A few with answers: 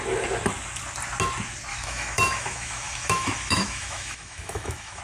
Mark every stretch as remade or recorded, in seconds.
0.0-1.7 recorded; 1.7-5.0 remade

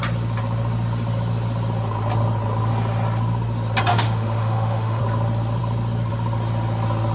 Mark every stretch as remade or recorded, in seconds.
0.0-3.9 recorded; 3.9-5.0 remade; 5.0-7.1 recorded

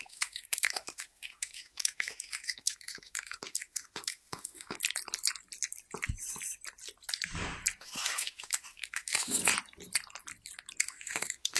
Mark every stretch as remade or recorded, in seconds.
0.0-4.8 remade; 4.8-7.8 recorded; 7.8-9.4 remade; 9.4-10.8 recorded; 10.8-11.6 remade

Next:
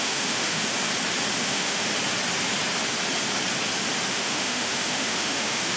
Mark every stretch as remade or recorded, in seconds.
0.0-0.7 remade; 0.7-1.4 recorded; 1.4-1.9 remade; 1.9-4.1 recorded; 4.1-5.8 remade